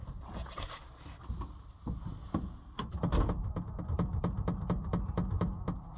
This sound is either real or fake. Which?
real